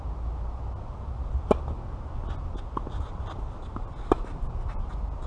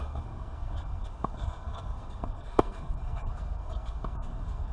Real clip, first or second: first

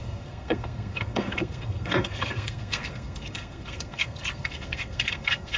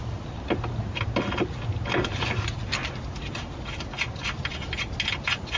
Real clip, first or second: second